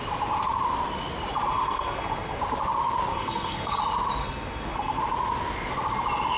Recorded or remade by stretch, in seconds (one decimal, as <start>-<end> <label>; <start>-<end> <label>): 0.0-1.5 recorded; 1.5-2.4 remade; 2.4-3.1 recorded; 3.1-3.8 remade; 3.8-4.2 recorded; 4.2-5.0 remade; 5.0-6.4 recorded